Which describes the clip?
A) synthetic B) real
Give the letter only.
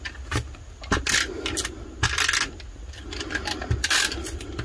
B